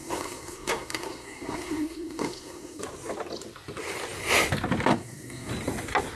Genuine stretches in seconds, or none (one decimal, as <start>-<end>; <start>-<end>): 2.8-4.9; 5.5-6.2